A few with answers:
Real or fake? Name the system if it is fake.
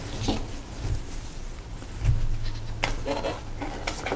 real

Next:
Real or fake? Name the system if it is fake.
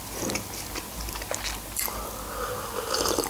real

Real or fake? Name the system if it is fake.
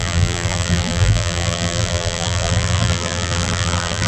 fake, vocoder, BigVGAN v2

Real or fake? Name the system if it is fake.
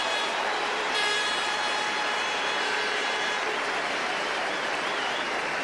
fake, vocoder, BigVGAN v2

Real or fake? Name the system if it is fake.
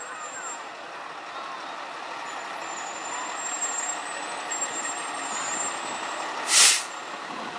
real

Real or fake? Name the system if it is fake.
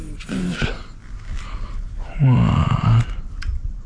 real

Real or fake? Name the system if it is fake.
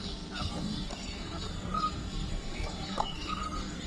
fake, codec, SNAC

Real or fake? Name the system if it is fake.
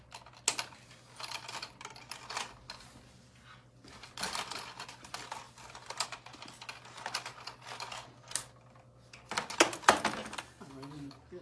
real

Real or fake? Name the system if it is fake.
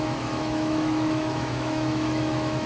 fake, autoencoder, DAC-VAE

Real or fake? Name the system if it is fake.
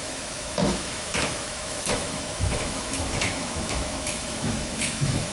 fake, autoencoder, DAC-VAE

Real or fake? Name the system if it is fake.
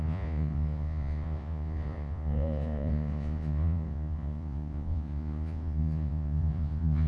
fake, vocoder, Vocos